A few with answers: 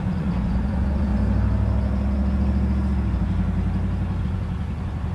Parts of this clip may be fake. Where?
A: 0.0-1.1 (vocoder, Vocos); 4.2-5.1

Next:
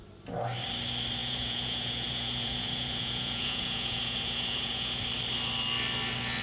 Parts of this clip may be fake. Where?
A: 1.2-5.0 (vocoder, Vocos)

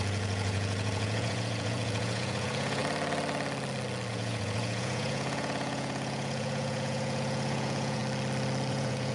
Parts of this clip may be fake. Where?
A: 0.0-2.8 (vocoder, Vocos); 4.1-8.0; 8.7-9.1